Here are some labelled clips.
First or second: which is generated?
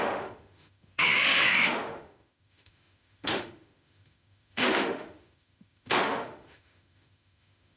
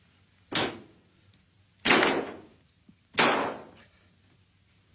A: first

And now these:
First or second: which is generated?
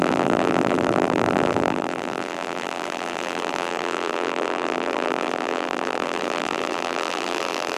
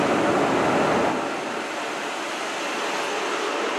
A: first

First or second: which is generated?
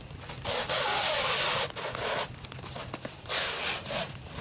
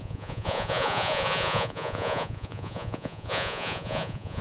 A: second